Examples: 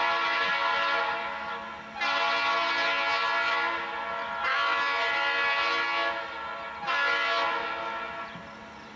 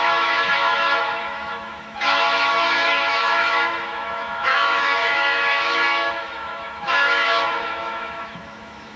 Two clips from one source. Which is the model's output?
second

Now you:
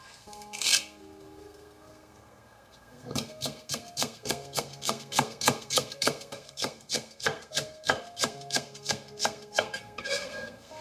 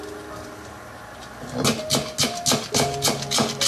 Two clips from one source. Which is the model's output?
first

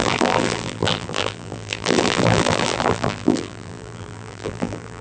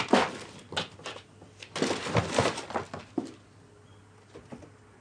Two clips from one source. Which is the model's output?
first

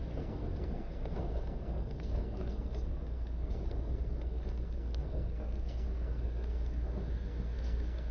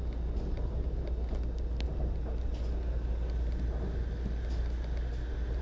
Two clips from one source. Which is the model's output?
first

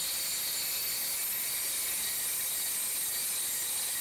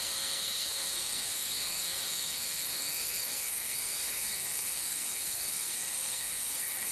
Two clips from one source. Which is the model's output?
second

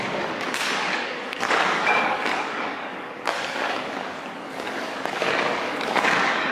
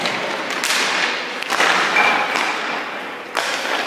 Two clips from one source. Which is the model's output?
first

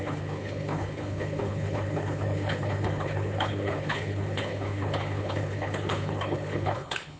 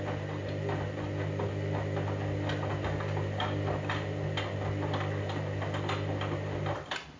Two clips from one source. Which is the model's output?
first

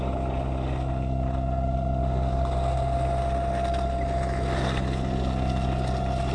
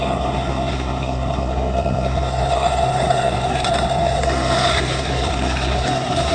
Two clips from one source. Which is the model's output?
second